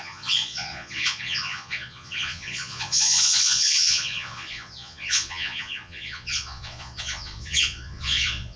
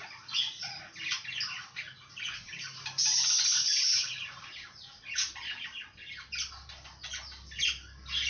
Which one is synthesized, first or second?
first